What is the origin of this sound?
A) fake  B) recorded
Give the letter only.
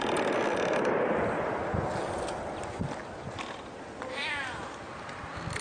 B